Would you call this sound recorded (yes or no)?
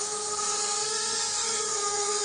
no